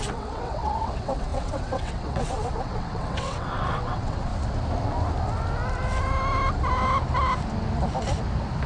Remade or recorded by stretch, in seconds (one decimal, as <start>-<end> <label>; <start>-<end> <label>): 0.0-4.3 remade; 4.3-8.7 recorded